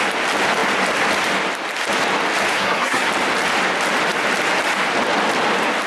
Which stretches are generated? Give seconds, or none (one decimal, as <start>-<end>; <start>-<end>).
2.5-3.1